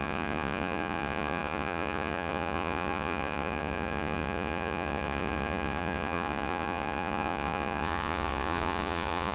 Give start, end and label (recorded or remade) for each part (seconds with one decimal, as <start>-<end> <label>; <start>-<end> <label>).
0.0-9.3 remade